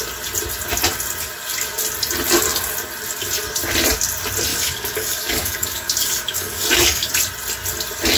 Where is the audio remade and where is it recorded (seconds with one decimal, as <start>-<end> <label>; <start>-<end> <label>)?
0.0-4.5 recorded; 4.5-7.1 remade; 7.1-8.2 recorded